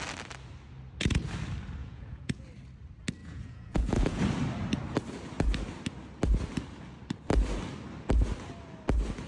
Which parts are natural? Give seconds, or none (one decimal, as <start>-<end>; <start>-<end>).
0.0-1.8; 2.4-3.2; 4.2-9.3